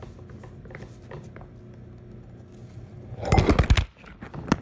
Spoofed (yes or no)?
no